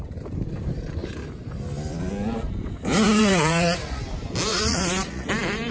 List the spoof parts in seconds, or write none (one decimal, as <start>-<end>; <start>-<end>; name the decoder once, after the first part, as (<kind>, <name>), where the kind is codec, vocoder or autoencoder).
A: 3.2-4.0 (vocoder, Vocos); 4.5-5.3